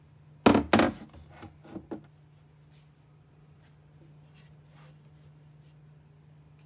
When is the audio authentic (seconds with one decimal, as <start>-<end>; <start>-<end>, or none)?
0.0-6.7